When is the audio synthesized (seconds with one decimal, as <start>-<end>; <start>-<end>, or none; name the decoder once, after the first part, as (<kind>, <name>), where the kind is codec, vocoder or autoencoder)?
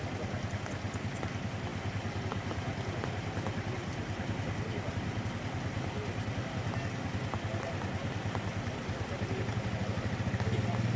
none